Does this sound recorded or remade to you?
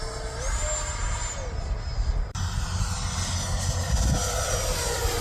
recorded